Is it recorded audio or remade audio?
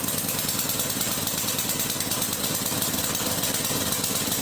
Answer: recorded